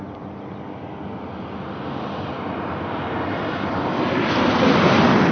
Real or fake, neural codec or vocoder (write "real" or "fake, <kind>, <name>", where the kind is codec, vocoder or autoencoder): real